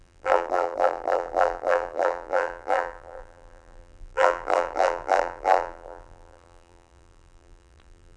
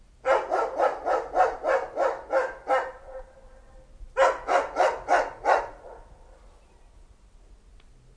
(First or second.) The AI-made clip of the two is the first